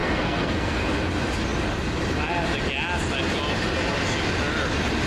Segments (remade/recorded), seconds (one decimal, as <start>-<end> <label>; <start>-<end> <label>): 0.0-0.8 remade; 0.8-5.1 recorded